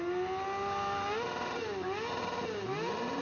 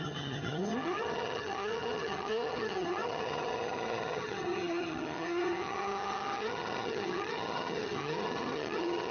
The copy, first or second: second